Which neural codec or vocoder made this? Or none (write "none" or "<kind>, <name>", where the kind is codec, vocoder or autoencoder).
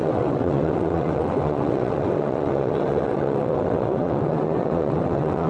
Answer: vocoder, WaveNeXt